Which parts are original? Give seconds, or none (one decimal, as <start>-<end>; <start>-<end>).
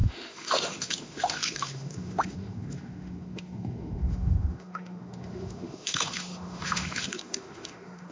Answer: none